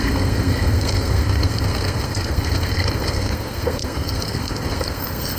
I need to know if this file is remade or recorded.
remade